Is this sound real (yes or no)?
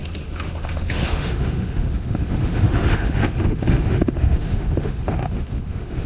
no